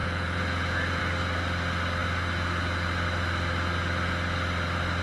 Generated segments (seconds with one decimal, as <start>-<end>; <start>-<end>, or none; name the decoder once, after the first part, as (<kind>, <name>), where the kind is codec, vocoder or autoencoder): 0.0-1.0 (vocoder, Vocos)